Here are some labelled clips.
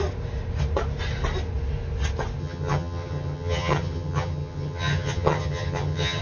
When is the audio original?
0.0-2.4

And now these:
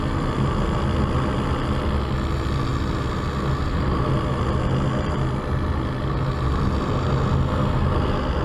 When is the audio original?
0.0-8.4